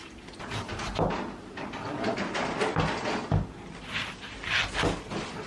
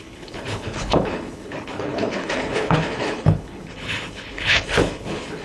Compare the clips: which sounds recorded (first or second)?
first